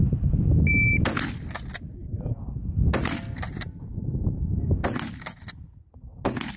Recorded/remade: recorded